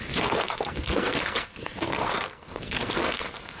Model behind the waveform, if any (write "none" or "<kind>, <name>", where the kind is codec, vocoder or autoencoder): codec, SNAC